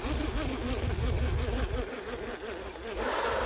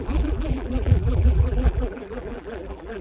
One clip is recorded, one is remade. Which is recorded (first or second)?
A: first